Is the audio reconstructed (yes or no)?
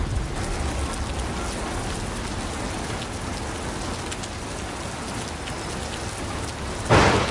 no